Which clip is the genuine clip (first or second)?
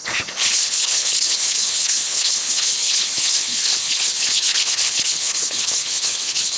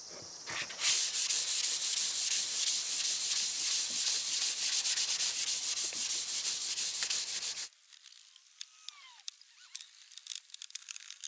second